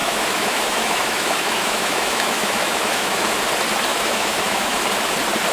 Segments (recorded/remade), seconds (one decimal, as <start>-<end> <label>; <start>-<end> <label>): 0.0-3.3 remade; 3.3-3.9 recorded; 3.9-4.8 remade; 4.8-5.5 recorded

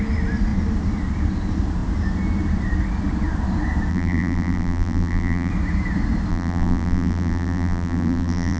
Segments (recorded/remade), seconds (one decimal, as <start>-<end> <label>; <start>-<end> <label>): 0.0-3.9 recorded; 3.9-5.5 remade; 5.5-6.3 recorded; 6.3-8.6 remade

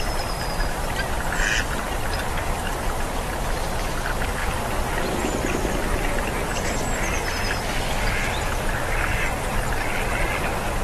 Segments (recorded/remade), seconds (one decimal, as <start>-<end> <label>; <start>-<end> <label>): 0.0-10.8 recorded